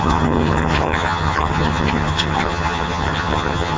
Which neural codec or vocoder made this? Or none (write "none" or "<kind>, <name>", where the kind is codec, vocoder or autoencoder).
vocoder, HiFi-GAN